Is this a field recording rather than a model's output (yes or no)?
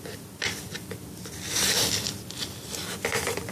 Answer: yes